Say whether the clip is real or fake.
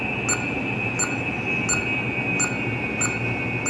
real